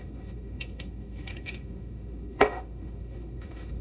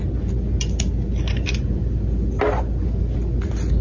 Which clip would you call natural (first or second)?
second